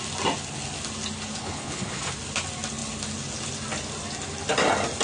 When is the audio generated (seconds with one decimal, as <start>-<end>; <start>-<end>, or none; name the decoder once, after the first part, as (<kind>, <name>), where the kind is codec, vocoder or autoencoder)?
1.4-2.0 (codec, HILCodec)